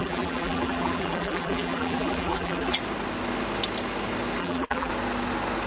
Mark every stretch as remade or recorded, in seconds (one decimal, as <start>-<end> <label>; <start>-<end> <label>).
0.0-2.8 remade; 2.8-4.4 recorded; 4.4-4.9 remade; 4.9-5.7 recorded